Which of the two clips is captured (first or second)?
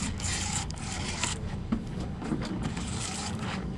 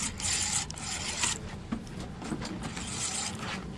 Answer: second